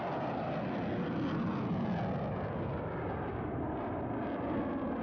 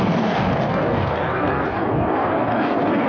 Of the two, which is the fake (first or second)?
second